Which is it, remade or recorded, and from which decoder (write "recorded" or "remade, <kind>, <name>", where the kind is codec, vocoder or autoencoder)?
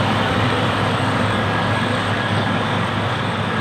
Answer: remade, codec, DAC